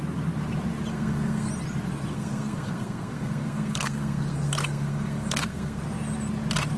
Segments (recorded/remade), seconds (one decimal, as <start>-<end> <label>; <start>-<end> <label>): 0.0-0.9 recorded; 0.9-1.5 remade; 1.5-2.1 recorded; 2.1-5.8 remade; 5.8-6.8 recorded